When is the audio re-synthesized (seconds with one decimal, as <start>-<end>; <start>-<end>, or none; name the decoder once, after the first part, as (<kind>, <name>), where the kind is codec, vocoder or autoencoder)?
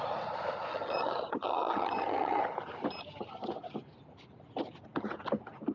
0.7-2.4 (vocoder, HiFi-GAN)